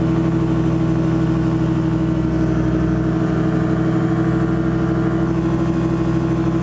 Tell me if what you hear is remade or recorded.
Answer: recorded